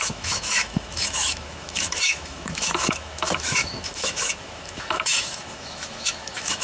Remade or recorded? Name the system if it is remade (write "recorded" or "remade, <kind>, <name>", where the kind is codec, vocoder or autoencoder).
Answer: remade, autoencoder, DAC-VAE